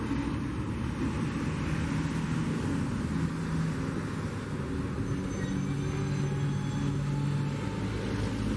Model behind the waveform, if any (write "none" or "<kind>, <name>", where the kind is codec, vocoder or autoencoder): none